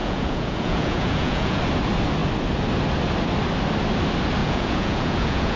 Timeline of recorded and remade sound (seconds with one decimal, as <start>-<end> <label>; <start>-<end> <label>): 0.0-1.6 remade; 1.6-4.4 recorded; 4.4-5.6 remade